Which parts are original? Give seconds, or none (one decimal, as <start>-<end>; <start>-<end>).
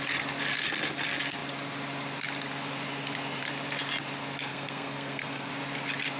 0.0-4.5; 5.5-6.2